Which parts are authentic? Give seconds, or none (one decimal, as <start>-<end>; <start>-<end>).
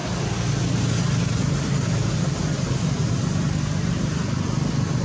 0.0-5.0